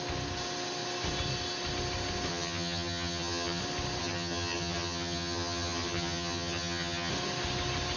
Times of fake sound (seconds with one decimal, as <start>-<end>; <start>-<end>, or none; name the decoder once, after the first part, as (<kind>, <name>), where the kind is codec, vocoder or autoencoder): 2.3-3.6 (vocoder, HiFi-GAN); 4.0-7.1